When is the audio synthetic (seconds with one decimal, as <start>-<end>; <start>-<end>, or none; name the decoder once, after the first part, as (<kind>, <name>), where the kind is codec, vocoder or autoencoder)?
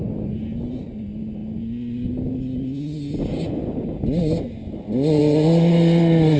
none